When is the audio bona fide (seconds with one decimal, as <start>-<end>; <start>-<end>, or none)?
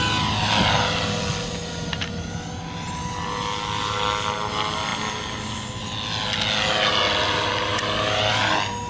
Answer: 0.0-8.9